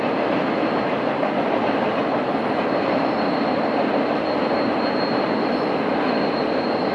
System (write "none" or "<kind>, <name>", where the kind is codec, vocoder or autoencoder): none